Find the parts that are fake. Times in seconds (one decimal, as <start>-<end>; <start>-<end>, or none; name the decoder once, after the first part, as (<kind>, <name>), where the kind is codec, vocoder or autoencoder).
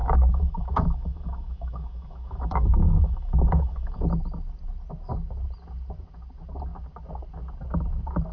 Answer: 0.0-4.0 (autoencoder, DAC-VAE)